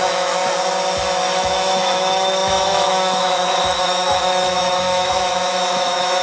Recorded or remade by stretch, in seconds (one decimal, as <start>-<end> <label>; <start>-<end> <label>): 0.0-0.4 remade; 0.4-1.1 recorded; 1.1-6.2 remade